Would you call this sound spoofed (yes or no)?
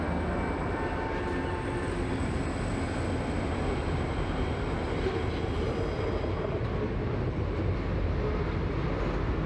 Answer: no